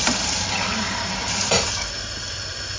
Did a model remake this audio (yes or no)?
no